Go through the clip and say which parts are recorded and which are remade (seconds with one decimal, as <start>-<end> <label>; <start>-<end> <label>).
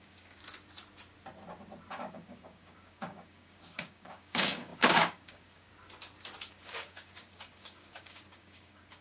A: 0.0-0.4 remade; 0.4-1.9 recorded; 1.9-5.7 remade; 5.7-6.5 recorded; 6.5-9.0 remade